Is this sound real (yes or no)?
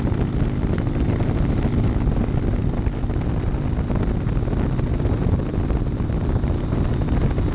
yes